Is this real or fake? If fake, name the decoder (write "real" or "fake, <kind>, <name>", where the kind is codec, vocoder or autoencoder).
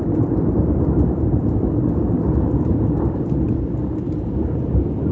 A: real